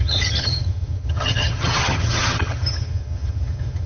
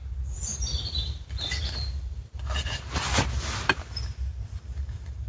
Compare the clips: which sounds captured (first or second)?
second